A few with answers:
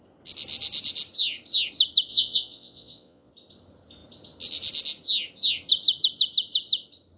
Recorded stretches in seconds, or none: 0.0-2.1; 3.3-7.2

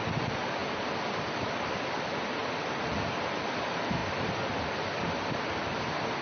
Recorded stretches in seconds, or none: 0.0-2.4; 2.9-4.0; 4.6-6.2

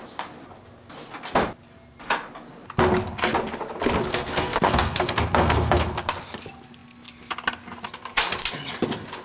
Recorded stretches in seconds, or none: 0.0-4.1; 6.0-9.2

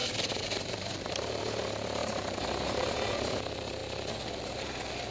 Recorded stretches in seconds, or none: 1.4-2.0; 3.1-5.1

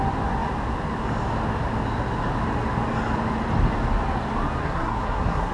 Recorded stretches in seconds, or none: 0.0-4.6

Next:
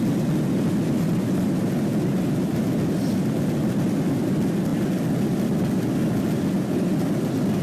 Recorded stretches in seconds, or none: 0.0-7.6

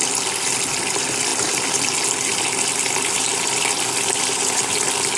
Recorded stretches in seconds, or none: 0.0-5.2

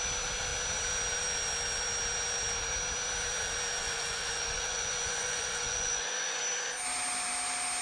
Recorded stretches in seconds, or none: 0.0-3.8; 6.4-7.8